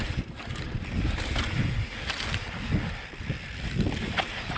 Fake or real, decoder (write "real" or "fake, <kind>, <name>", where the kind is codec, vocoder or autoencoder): real